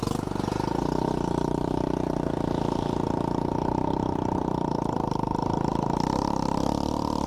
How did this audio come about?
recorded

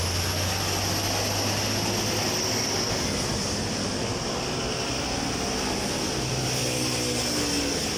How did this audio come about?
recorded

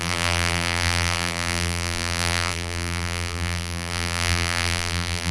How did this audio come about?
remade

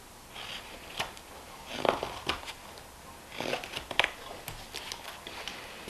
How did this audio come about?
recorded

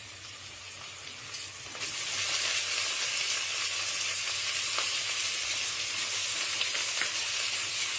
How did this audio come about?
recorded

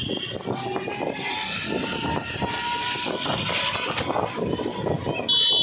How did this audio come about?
recorded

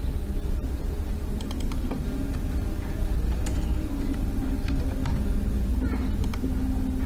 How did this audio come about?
recorded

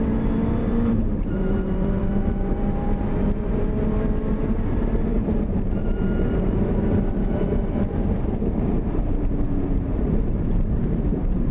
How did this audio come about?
remade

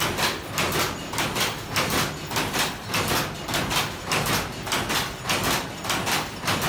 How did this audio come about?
recorded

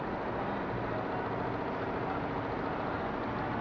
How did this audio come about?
recorded